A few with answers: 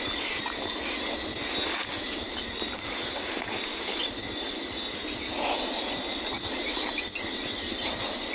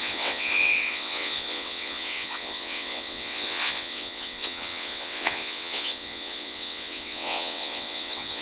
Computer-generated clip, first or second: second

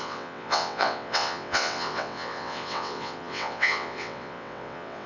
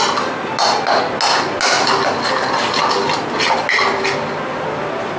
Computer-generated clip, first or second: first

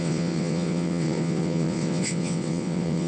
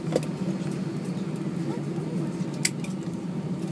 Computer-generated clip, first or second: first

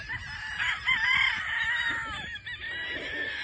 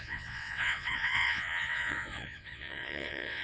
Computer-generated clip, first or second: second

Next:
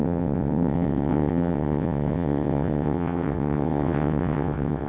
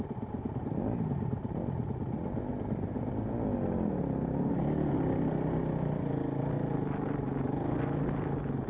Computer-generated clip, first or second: first